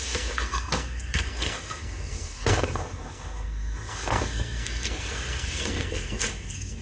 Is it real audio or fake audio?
fake